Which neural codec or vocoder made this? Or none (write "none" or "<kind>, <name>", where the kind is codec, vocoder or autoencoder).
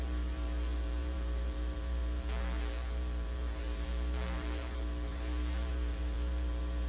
vocoder, BigVGAN v2